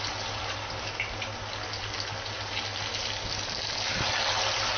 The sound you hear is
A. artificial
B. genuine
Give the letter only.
B